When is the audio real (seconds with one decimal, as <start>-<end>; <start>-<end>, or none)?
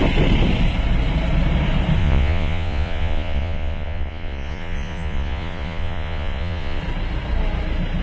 0.0-2.0; 6.8-8.0